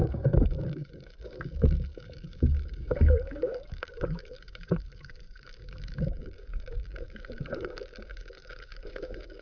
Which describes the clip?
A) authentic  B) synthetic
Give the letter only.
B